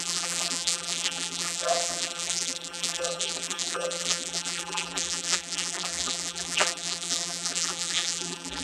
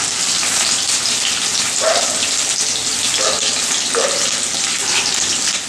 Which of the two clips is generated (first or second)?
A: first